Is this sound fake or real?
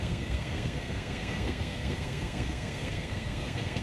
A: fake